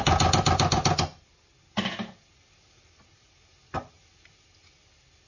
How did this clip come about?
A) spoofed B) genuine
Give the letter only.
B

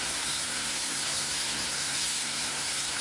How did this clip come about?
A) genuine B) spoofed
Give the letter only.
B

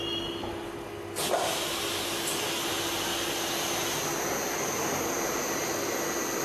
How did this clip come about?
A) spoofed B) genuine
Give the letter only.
B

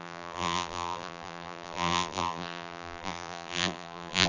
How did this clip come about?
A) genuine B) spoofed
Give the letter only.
B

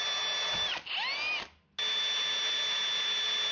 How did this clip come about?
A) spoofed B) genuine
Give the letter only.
B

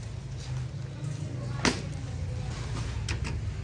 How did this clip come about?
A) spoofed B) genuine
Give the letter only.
B